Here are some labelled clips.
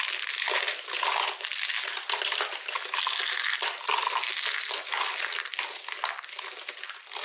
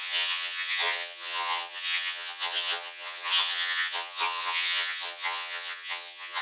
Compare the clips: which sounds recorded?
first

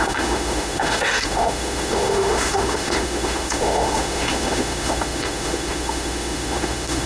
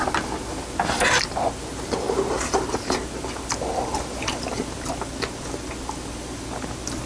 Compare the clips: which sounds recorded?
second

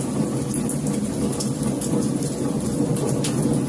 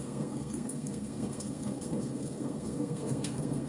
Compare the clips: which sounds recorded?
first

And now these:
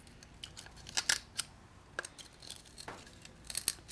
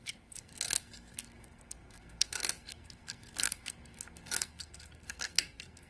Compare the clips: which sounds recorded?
first